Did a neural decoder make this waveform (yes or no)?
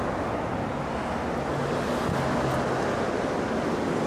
no